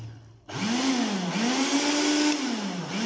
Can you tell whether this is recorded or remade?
recorded